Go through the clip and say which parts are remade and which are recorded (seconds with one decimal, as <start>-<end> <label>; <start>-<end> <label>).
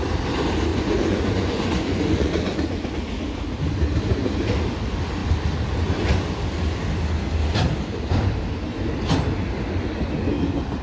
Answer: 0.0-0.7 recorded; 0.7-2.9 remade; 2.9-10.8 recorded